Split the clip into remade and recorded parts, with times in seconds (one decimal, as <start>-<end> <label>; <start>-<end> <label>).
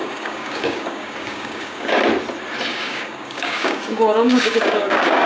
0.0-2.0 remade; 2.0-2.7 recorded; 2.7-5.3 remade